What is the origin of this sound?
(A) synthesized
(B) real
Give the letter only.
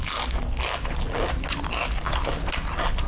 B